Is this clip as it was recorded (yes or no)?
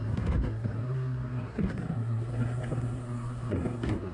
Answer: no